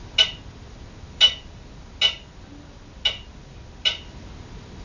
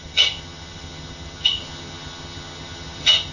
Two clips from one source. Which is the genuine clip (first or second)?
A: first